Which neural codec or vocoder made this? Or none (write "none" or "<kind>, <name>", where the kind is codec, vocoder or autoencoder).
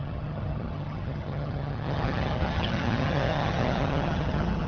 vocoder, HiFi-GAN